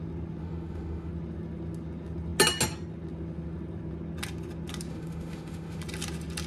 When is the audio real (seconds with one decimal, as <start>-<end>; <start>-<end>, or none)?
0.0-0.4; 1.1-4.9; 5.8-6.5